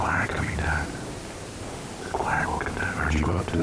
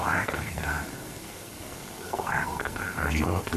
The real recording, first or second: first